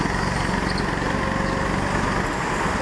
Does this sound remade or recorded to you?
recorded